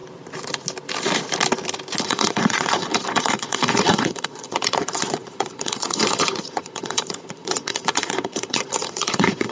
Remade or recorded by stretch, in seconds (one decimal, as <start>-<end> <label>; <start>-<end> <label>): 0.0-2.0 recorded; 2.0-9.5 remade